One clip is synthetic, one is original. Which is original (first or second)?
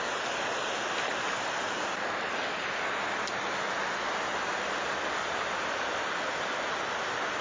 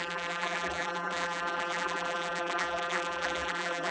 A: first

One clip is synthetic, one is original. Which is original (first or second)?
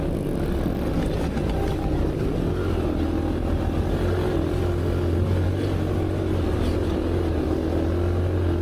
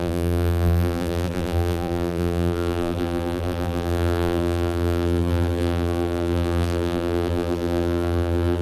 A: first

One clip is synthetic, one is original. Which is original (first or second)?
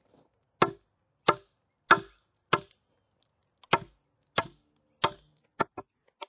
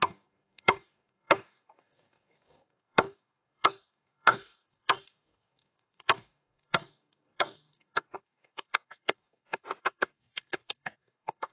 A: first